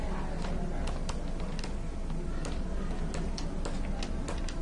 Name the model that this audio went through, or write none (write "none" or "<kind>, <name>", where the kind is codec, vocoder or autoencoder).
none